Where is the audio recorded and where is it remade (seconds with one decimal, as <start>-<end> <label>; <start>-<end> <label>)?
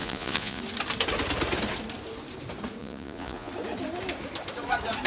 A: 0.0-0.6 remade; 0.6-2.8 recorded; 2.8-3.5 remade; 3.5-5.1 recorded